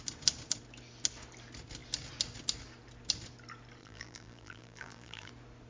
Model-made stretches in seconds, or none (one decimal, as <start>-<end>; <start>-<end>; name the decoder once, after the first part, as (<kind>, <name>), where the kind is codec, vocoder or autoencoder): 3.8-5.3 (vocoder, BigVGAN v2)